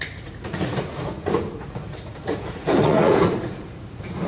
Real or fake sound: fake